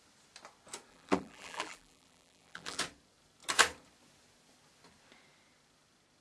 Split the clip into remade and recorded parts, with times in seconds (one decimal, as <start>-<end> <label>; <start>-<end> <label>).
0.0-0.9 recorded; 0.9-2.8 remade; 2.8-6.2 recorded